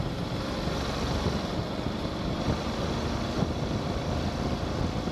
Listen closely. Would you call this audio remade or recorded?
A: recorded